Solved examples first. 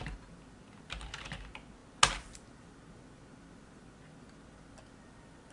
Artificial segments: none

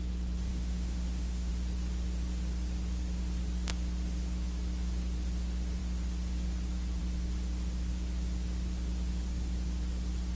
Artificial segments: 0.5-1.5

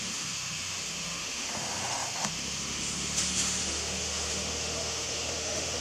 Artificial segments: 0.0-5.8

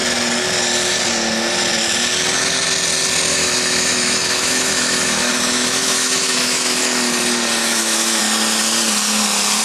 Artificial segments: 3.3-6.8; 7.6-8.2